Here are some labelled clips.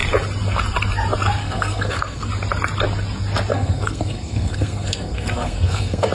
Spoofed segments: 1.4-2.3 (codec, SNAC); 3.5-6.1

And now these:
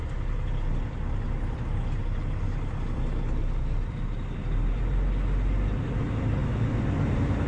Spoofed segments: none

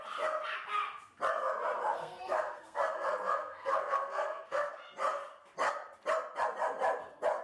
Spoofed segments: 1.9-4.7 (codec, SNAC)

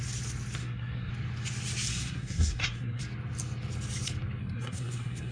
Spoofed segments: 0.6-1.1 (codec, SNAC); 1.9-3.0; 4.4-5.3

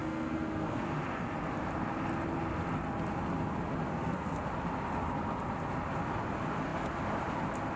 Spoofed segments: 0.0-0.8 (codec, SNAC); 3.9-4.4